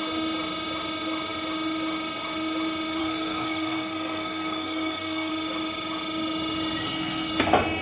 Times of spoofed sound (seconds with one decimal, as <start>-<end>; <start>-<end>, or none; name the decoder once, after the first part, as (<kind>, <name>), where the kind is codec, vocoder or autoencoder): 3.0-5.3 (codec, SNAC); 6.8-7.3